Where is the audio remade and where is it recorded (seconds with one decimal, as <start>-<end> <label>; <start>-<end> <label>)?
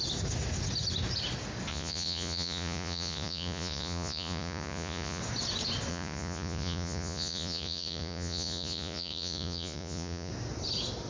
0.0-1.7 recorded; 1.7-5.2 remade; 5.2-5.9 recorded; 5.9-10.3 remade; 10.3-11.1 recorded